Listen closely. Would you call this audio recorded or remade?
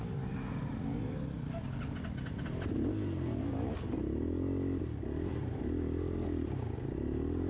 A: recorded